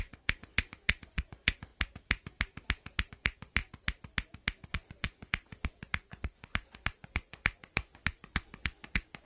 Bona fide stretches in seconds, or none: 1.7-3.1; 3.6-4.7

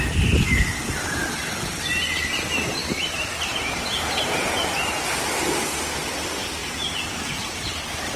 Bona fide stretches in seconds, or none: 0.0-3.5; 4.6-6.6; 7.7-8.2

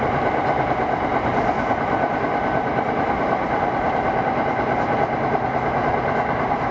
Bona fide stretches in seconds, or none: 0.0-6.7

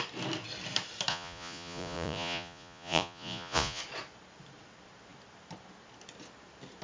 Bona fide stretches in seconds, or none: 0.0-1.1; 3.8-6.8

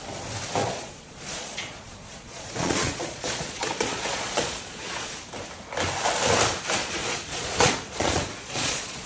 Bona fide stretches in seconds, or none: 0.0-0.6; 5.1-6.8

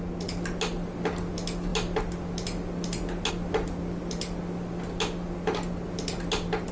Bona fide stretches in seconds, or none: 0.0-6.7

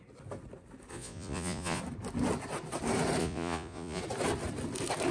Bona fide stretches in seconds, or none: 0.0-0.9; 1.8-3.2; 4.0-5.1

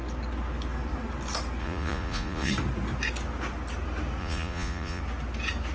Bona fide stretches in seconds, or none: 0.0-1.6; 2.5-4.2; 5.0-5.7